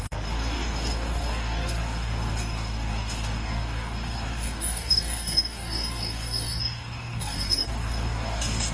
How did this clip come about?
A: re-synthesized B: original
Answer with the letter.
A